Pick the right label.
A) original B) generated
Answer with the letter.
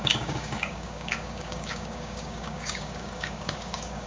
B